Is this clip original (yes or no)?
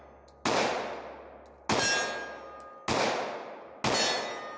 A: yes